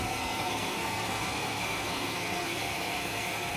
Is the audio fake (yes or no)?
yes